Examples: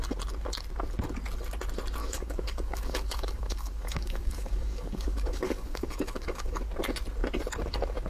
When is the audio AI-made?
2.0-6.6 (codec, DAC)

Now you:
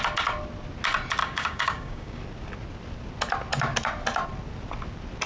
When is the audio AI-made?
1.2-2.2 (codec, DAC)

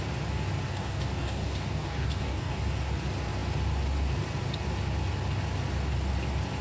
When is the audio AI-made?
0.7-2.6 (codec, DAC)

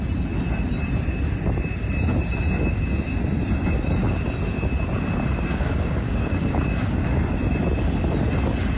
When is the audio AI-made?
5.5-7.2 (codec, DAC)

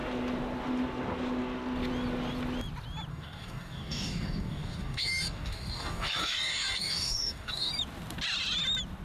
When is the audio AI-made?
3.1-7.7 (codec, DAC)